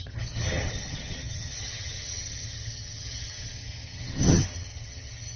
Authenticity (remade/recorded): remade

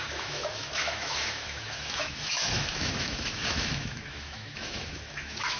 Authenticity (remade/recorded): remade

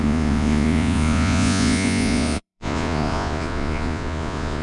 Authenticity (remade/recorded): remade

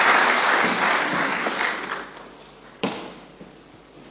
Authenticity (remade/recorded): remade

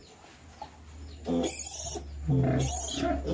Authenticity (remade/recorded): recorded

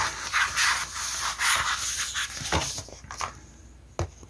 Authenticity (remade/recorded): recorded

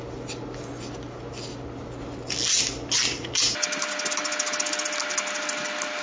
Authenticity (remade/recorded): recorded